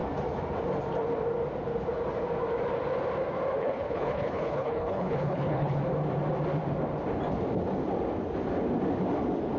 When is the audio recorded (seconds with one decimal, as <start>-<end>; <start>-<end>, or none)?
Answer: 0.0-3.6; 5.8-9.6